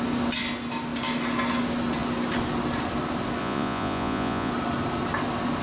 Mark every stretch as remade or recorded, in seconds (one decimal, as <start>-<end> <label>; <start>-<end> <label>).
0.0-3.4 recorded; 3.4-4.5 remade; 4.5-5.6 recorded